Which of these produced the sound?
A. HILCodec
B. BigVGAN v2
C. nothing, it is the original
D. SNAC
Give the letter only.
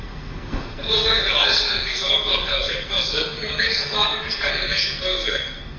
D